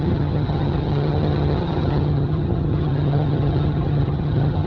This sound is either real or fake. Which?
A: fake